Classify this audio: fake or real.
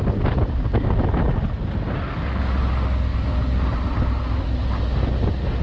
real